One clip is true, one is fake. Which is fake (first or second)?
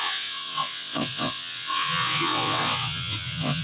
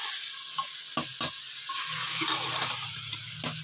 first